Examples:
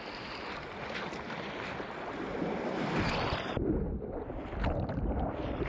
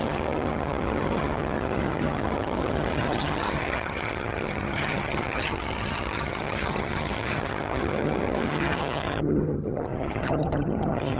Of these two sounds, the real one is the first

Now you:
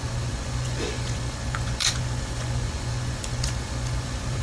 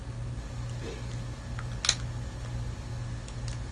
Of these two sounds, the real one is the second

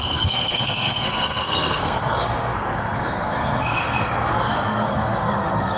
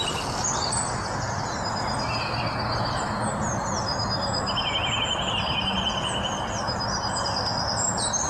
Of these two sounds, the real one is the second